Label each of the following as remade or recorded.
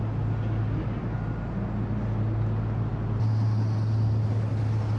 recorded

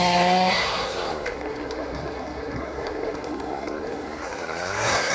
remade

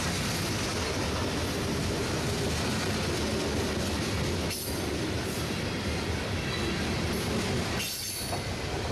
recorded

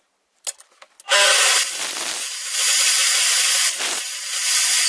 recorded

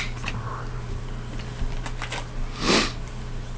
recorded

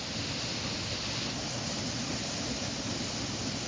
recorded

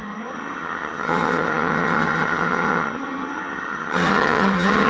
remade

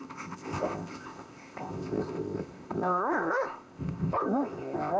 remade